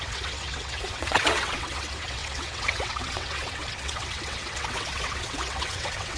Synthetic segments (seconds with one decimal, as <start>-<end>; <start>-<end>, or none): 0.0-6.2